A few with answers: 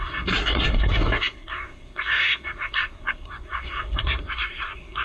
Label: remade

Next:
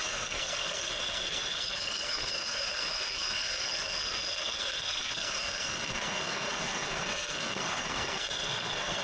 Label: remade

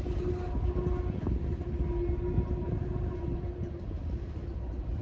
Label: recorded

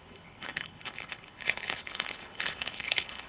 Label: remade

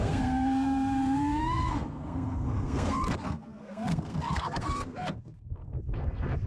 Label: remade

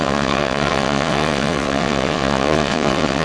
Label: remade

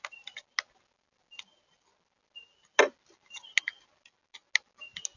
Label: recorded